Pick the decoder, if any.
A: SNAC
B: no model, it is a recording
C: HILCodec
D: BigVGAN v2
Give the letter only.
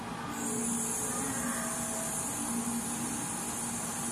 B